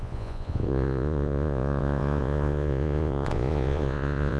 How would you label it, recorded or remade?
remade